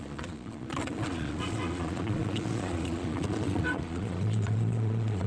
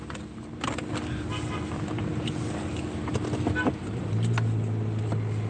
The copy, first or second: first